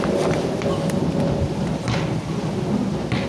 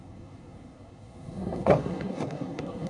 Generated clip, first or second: second